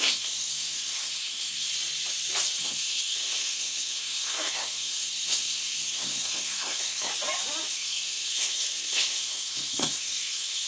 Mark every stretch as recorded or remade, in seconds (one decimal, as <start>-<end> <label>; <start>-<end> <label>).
0.0-1.7 remade; 1.7-2.6 recorded; 2.6-7.1 remade; 7.1-7.7 recorded; 7.7-10.7 remade